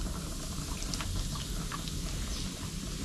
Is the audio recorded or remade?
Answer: recorded